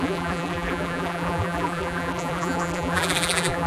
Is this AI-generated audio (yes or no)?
yes